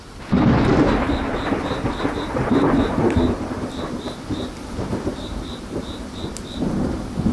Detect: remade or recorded remade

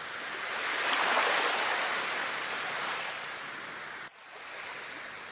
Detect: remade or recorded recorded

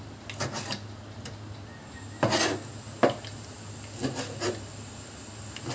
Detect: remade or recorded recorded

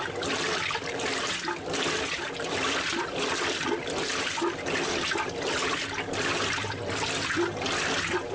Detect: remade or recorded recorded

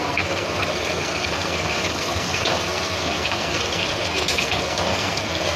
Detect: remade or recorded remade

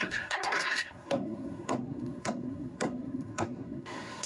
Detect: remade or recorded remade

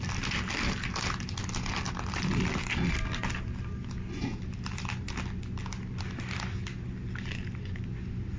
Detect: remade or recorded recorded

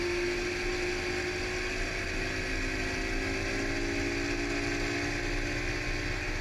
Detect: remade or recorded recorded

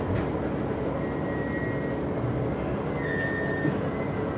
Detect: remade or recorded recorded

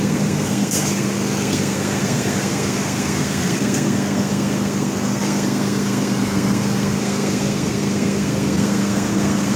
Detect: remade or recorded remade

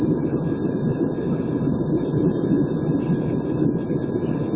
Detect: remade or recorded remade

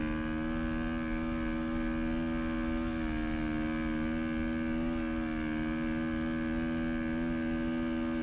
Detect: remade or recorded recorded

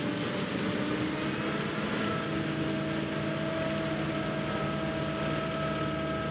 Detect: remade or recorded recorded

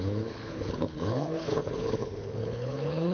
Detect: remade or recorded remade